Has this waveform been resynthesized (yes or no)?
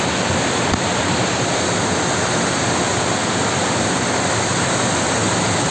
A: no